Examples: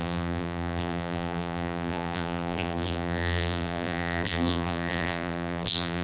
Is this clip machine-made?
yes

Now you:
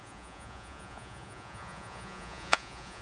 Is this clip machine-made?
yes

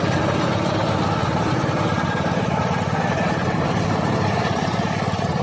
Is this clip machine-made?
no